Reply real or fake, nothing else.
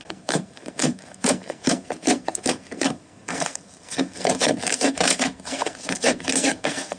fake